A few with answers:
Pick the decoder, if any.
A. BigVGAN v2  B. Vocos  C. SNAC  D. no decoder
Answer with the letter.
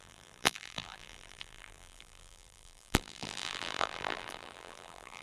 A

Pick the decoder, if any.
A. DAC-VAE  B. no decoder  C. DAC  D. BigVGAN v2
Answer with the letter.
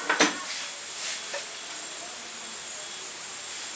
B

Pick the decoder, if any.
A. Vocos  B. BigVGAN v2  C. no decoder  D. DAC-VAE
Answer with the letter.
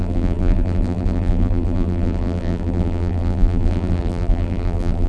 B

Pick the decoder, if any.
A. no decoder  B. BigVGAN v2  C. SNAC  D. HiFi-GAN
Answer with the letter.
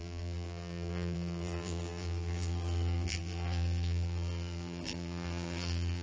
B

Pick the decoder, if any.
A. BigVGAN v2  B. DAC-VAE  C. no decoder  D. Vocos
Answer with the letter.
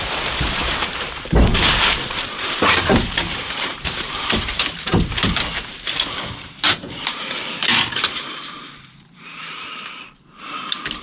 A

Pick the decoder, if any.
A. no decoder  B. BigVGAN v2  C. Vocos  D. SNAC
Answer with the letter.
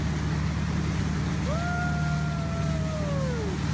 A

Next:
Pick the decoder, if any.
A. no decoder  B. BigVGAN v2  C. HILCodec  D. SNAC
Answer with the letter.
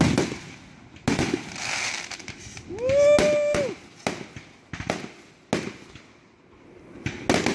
A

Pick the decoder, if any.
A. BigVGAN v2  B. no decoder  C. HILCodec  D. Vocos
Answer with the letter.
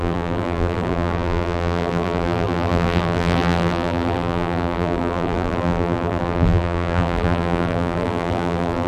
A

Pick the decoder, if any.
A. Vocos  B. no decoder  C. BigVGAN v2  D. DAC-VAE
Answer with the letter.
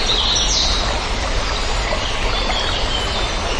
B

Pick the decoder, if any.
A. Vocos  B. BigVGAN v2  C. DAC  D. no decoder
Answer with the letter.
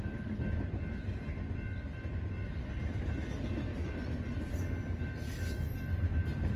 D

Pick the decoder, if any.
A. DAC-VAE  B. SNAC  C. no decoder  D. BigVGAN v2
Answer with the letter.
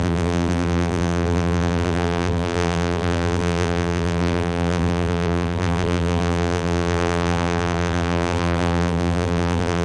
D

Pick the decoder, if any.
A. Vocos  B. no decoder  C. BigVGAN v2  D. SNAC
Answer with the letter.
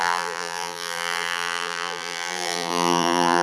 C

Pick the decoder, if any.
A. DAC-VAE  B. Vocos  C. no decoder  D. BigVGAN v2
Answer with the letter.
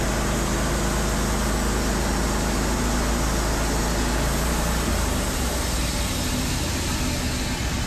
C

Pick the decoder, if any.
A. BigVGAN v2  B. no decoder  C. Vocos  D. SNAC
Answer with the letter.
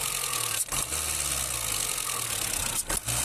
B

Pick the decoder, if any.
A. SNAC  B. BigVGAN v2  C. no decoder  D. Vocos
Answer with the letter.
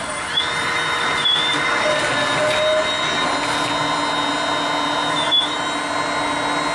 C